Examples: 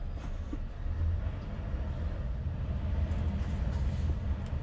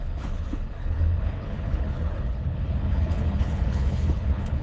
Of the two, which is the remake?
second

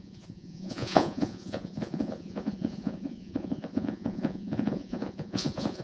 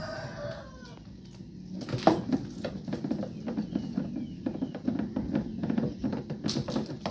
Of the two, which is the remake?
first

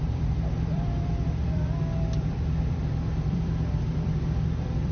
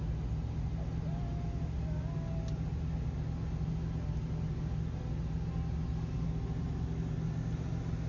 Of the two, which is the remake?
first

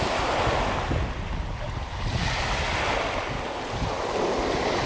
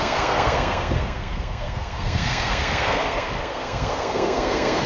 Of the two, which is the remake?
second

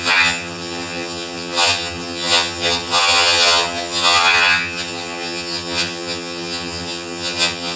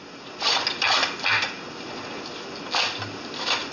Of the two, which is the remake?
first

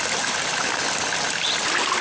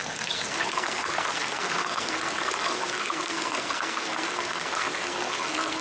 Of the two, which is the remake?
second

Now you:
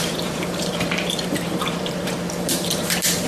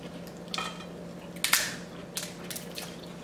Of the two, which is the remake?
first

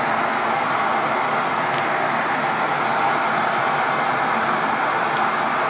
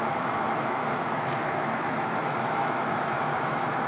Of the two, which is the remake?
second